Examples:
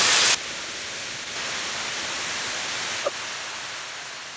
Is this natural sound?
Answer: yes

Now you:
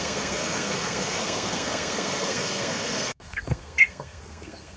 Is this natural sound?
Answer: no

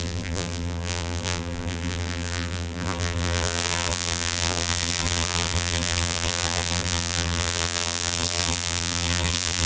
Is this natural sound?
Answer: no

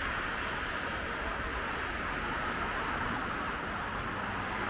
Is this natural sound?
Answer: yes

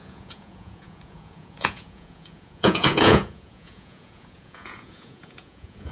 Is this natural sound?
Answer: no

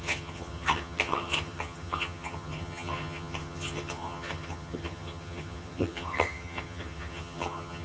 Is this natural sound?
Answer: no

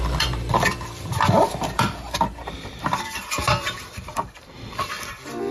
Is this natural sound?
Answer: no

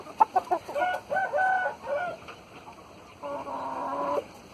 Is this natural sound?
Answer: yes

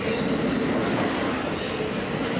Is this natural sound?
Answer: yes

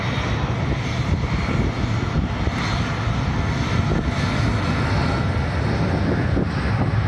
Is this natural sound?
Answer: yes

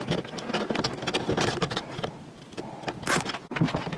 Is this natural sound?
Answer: yes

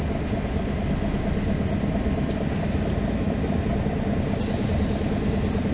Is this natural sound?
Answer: yes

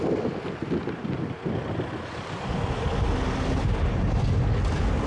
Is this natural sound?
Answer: yes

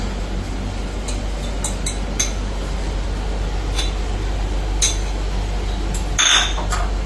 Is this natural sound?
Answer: yes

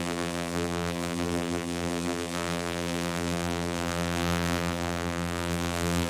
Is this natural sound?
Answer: no